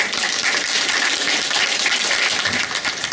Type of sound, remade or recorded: recorded